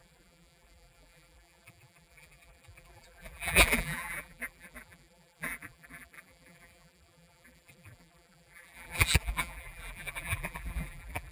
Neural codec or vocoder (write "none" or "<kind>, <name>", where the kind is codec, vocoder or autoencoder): vocoder, BigVGAN v2